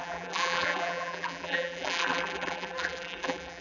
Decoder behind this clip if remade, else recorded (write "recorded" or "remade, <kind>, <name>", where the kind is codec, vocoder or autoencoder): remade, vocoder, BigVGAN v2